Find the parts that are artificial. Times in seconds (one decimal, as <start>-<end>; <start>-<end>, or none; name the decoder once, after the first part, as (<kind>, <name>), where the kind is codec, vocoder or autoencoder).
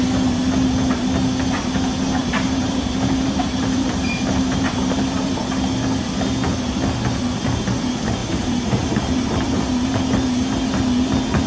2.2-5.3 (vocoder, BigVGAN v2); 8.2-10.0